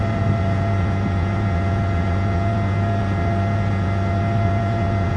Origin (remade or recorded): recorded